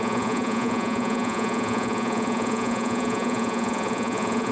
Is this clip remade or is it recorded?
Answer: remade